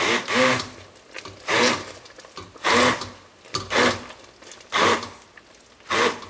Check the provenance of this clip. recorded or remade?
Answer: recorded